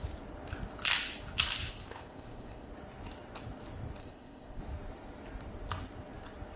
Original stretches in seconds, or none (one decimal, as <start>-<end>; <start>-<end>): 0.0-1.6; 2.7-4.0; 4.6-6.6

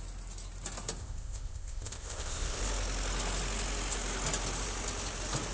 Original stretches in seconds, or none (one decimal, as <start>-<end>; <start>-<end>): 0.0-1.0; 2.6-5.5

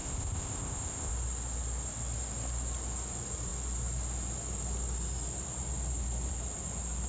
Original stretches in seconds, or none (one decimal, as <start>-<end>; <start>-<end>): 1.1-7.1

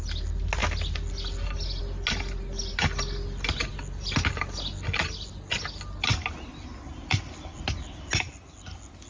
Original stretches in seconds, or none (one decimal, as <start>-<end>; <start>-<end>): 0.0-9.1

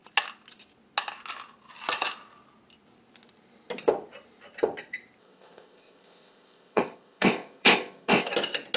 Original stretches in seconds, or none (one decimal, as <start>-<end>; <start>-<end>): 0.0-5.2; 8.3-8.8

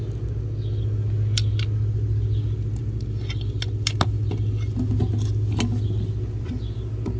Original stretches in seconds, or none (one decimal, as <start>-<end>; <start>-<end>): 0.0-7.2